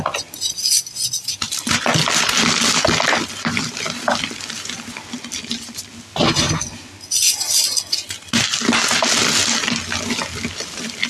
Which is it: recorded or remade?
recorded